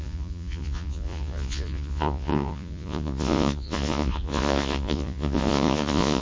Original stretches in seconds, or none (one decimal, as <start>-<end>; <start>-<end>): none

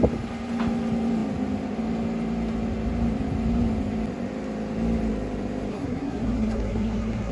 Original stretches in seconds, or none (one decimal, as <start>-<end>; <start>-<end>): 0.0-5.7

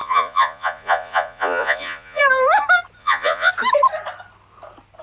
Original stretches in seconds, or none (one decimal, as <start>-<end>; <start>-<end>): 2.2-3.0; 3.5-5.0

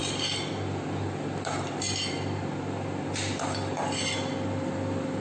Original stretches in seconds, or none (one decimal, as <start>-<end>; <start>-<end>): 0.0-5.2

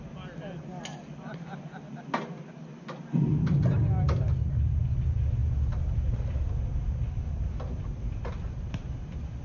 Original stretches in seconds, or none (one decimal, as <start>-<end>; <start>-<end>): 0.0-9.4

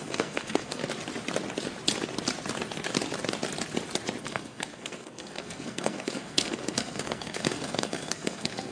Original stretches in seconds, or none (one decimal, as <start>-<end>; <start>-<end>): 0.8-4.2

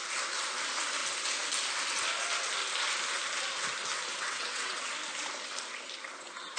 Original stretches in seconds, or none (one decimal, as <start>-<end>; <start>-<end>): 0.0-4.1; 4.9-6.6

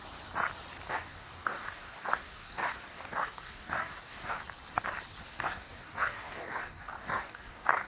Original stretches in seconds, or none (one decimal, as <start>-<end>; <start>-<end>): 0.0-0.9; 4.4-5.2